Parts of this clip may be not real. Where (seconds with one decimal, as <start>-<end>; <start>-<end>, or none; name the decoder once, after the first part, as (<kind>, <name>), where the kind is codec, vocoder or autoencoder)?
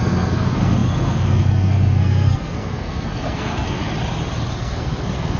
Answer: 0.0-3.8 (codec, SNAC); 4.5-5.4